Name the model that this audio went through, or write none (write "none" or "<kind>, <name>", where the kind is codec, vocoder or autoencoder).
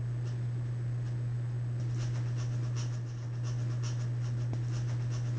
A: none